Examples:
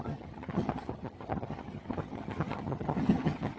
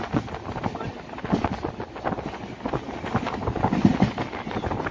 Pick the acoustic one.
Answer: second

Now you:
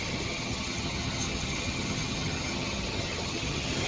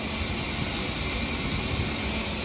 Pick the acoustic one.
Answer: second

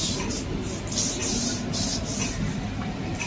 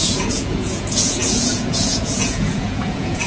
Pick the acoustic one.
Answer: first